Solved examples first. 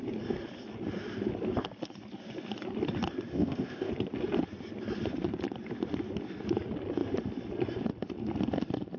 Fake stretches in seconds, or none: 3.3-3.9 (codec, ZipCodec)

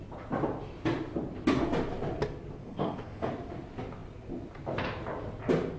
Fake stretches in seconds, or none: 2.6-3.3 (codec, SNAC)

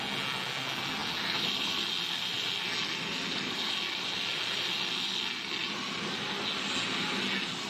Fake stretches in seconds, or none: none

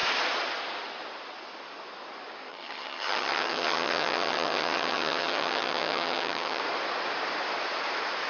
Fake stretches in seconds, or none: 2.5-6.6 (vocoder, HiFi-GAN)